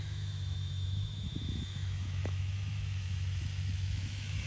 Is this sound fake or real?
fake